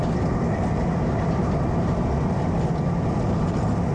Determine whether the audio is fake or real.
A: real